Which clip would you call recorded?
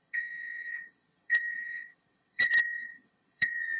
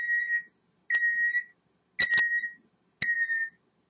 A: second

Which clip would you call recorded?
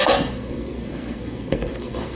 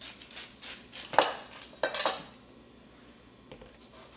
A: second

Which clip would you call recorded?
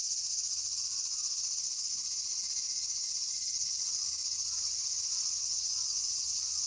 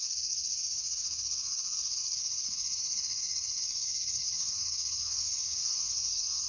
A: first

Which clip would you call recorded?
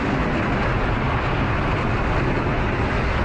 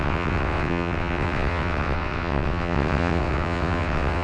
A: first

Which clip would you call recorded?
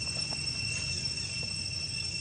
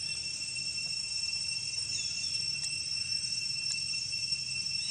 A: second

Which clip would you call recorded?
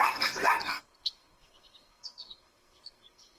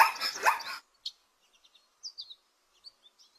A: second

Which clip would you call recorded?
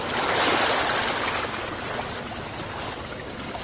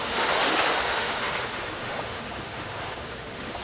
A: first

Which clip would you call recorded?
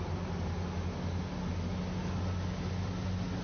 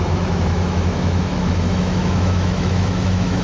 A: first